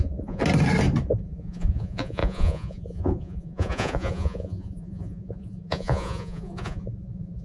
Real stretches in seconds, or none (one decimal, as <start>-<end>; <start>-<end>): 0.4-1.2